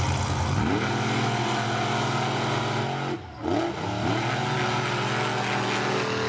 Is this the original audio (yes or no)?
yes